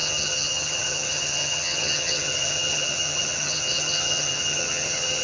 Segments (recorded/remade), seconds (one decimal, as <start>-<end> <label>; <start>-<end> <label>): 0.0-5.2 remade